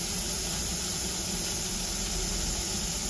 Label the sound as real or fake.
real